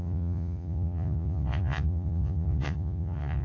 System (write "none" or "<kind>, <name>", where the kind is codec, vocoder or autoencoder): vocoder, Vocos